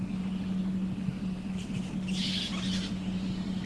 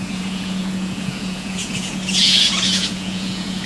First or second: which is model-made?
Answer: second